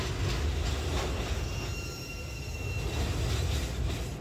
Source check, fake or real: real